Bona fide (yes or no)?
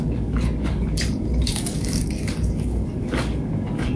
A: no